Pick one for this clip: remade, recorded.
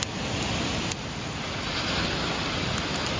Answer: recorded